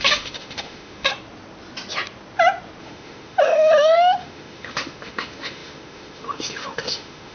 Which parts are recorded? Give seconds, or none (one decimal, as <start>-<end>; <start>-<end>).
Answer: 1.1-2.8